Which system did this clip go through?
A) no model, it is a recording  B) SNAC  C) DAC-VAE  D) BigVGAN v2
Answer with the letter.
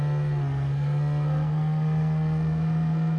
B